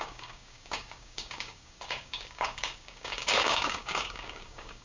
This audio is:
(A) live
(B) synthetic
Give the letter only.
B